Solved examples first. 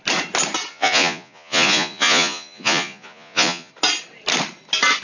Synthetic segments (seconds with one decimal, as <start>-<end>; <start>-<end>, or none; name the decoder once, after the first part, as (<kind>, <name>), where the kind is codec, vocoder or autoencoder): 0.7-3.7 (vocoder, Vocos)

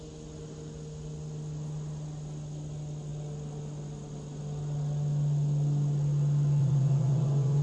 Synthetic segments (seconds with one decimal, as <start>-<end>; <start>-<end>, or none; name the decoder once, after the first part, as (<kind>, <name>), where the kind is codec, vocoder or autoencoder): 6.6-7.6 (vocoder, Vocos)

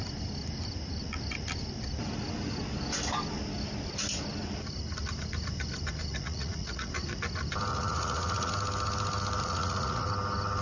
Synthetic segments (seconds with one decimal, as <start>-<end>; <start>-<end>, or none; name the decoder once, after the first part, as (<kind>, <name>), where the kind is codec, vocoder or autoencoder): 6.1-6.9 (vocoder, Vocos); 7.7-8.5; 9.4-10.1

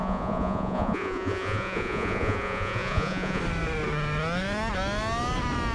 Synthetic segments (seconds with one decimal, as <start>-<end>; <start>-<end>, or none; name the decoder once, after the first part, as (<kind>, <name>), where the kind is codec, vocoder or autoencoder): 0.0-3.4 (vocoder, Vocos)

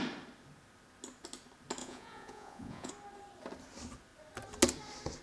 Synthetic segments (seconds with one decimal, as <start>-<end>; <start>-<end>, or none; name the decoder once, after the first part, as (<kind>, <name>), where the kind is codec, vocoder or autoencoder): 1.8-2.9 (vocoder, Vocos)